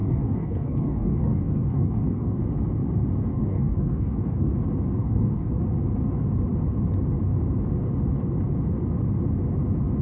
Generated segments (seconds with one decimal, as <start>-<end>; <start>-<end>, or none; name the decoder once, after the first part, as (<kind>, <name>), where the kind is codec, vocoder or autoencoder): 0.0-2.4 (codec, DAC); 3.3-4.5; 5.0-5.6